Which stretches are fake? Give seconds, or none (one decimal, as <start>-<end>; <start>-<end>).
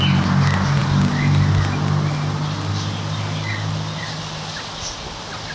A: none